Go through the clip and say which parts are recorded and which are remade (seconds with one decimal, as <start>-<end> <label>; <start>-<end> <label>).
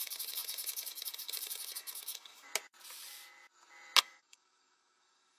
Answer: 0.0-2.5 remade; 2.5-4.0 recorded; 4.0-5.4 remade